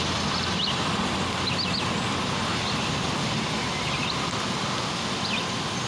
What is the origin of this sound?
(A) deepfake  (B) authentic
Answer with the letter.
B